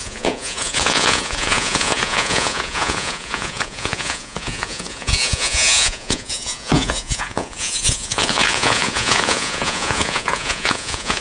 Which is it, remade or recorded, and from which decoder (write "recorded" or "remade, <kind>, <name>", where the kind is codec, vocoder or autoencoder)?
remade, vocoder, Vocos